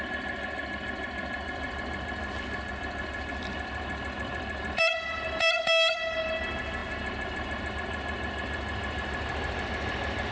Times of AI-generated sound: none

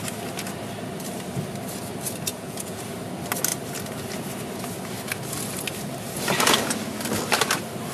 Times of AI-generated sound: 2.3-2.8 (vocoder, Vocos)

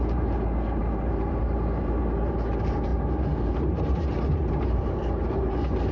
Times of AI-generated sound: 0.0-5.9 (vocoder, BigVGAN v2)

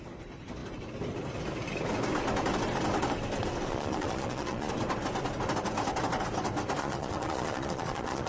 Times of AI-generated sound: 3.7-4.7 (vocoder, Vocos); 6.8-8.3

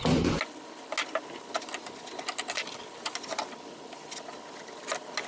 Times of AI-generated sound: none

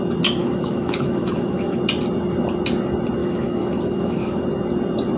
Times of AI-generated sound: 0.4-1.8 (autoencoder, DAC-VAE); 3.2-4.4

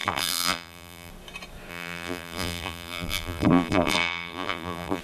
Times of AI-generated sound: 0.0-1.1 (vocoder, BigVGAN v2); 1.7-5.0